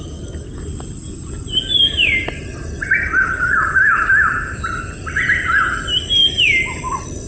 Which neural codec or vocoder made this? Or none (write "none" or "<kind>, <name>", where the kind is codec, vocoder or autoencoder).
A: none